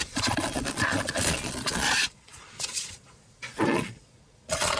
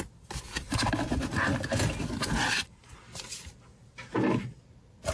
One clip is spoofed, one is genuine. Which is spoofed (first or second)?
first